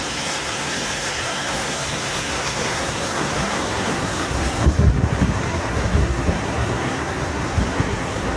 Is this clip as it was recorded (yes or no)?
no